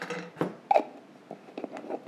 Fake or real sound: real